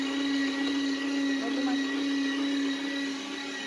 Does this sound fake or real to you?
real